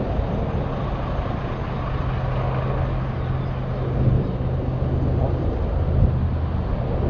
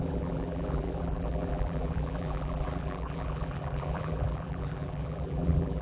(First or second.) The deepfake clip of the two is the second